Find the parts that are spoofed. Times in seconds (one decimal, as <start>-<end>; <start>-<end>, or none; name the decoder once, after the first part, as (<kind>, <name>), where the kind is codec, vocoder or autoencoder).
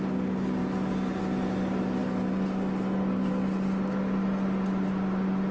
none